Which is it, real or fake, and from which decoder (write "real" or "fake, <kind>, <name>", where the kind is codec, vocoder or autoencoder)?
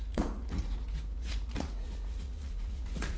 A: fake, vocoder, Vocos